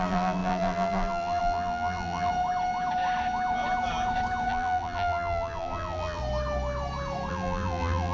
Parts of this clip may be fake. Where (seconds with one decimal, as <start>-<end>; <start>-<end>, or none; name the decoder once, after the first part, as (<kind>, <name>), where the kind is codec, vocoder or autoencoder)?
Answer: 0.0-2.3 (vocoder, BigVGAN v2); 4.5-6.2; 7.3-8.1